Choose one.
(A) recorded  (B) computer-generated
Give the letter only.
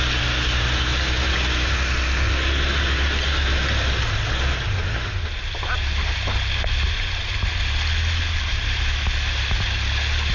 A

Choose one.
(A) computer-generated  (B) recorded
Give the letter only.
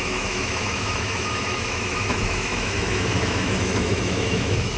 A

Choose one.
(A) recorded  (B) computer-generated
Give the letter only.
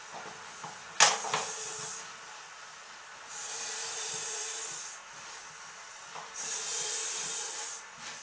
A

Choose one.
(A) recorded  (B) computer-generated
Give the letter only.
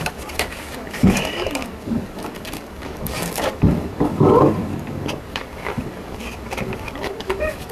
B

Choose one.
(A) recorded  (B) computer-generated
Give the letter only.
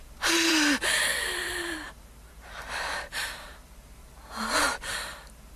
B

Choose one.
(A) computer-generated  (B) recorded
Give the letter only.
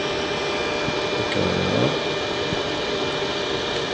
B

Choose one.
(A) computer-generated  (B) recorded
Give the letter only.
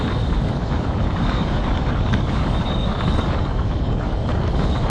A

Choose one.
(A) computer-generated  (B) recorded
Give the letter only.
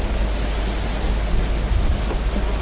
B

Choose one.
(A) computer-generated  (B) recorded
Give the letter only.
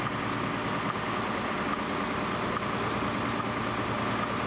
B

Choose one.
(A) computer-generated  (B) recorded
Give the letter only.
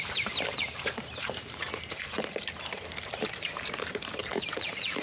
A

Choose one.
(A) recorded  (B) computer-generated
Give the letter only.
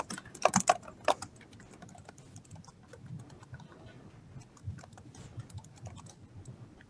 A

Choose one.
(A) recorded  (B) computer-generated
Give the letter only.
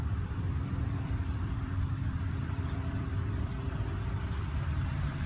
B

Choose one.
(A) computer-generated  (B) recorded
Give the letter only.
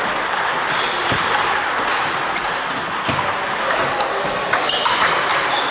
B